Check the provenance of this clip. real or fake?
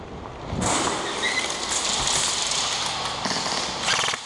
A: real